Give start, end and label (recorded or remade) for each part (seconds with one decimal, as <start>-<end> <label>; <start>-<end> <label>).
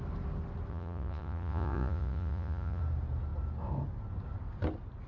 0.0-0.7 recorded; 0.7-2.8 remade; 2.8-5.1 recorded